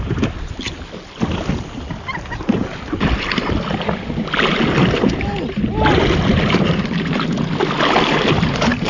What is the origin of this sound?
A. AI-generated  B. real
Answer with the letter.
B